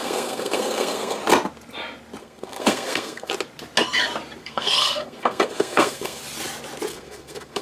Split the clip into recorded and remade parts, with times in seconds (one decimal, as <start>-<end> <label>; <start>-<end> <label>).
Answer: 0.0-1.2 remade; 1.2-2.2 recorded; 2.2-3.3 remade; 3.3-4.4 recorded; 4.4-6.2 remade; 6.2-6.9 recorded; 6.9-7.6 remade